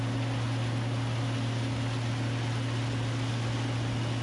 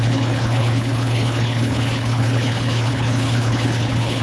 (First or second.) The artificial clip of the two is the second